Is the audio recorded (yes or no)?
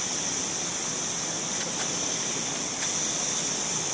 yes